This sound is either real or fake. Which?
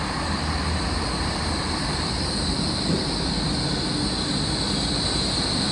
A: real